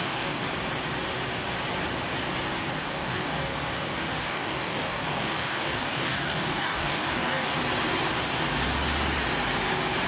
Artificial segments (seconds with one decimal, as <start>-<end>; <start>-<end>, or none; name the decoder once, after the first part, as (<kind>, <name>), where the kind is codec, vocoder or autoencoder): 0.0-0.4 (codec, DAC); 2.8-3.4; 4.2-7.5